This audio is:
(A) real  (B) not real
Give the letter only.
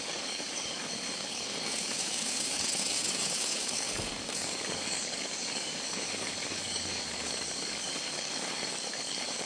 B